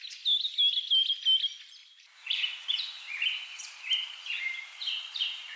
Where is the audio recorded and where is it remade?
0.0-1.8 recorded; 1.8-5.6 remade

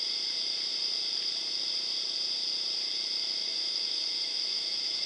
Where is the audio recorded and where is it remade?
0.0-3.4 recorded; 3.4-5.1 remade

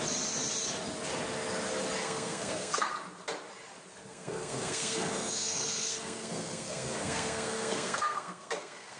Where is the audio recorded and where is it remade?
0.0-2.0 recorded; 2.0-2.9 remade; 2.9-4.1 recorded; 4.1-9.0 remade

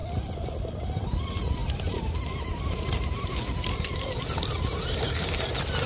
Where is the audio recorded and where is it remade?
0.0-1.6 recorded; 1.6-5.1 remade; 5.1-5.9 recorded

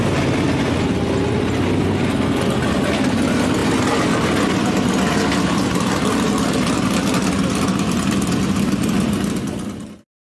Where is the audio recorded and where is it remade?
0.0-10.2 recorded